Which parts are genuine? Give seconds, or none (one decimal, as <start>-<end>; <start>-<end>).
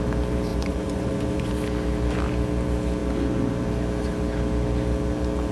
0.0-0.5; 1.5-5.5